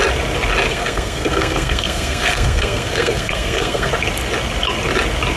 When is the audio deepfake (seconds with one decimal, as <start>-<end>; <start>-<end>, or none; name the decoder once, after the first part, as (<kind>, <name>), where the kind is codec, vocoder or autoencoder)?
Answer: 0.7-3.9 (codec, SNAC)